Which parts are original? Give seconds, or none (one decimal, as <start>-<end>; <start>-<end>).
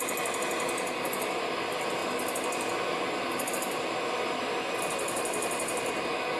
0.0-6.4